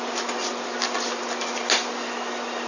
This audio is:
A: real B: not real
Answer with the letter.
A